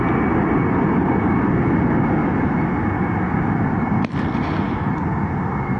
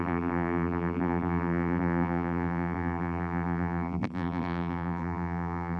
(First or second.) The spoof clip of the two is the second